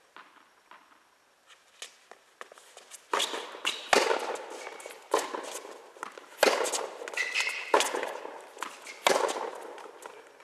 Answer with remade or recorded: recorded